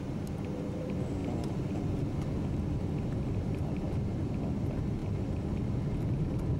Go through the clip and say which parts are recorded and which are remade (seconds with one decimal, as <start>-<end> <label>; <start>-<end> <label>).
0.0-1.2 remade; 1.2-3.3 recorded; 3.3-5.0 remade; 5.0-5.6 recorded; 5.6-6.6 remade

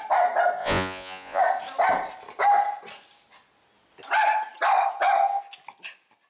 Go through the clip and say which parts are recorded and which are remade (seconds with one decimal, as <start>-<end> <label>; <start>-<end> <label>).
0.0-0.6 recorded; 0.6-1.4 remade; 1.4-6.3 recorded